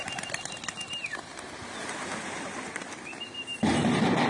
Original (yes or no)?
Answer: yes